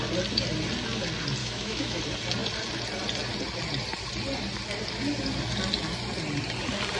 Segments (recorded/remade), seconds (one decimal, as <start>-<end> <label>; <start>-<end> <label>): 0.0-1.4 recorded; 1.4-2.0 remade; 2.0-7.0 recorded